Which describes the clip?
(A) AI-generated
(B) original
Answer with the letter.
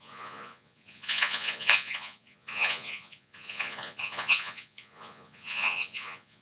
A